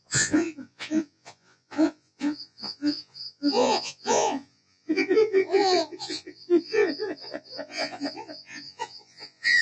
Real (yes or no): no